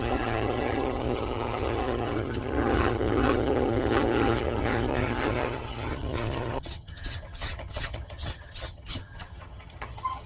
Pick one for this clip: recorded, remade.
remade